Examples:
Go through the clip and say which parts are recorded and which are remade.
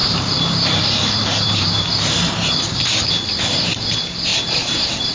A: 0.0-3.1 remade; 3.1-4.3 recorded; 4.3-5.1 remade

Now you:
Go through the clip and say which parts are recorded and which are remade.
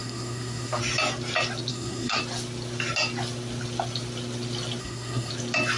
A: 0.0-0.8 remade; 0.8-1.7 recorded; 1.7-2.2 remade; 2.2-4.8 recorded; 4.8-5.3 remade; 5.3-5.8 recorded